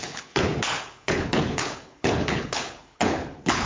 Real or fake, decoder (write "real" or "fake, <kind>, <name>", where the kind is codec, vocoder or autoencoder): fake, codec, HILCodec